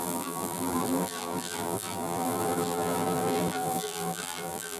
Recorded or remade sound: remade